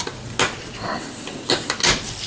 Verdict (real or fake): real